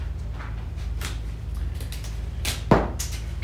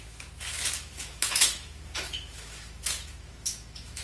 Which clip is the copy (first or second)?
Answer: second